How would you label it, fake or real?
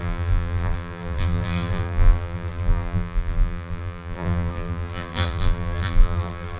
fake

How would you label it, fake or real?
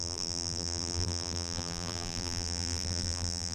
fake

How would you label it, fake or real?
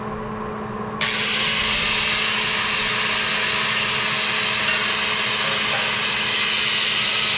real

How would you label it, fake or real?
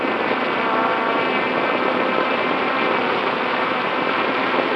fake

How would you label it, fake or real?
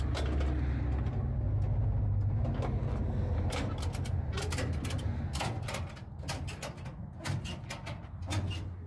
real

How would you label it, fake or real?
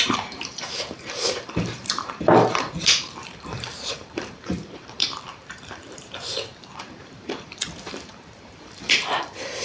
fake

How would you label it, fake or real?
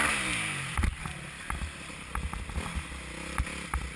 real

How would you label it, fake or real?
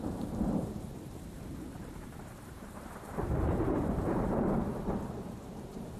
fake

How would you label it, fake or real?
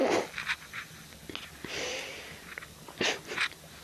real